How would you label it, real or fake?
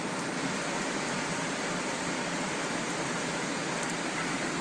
real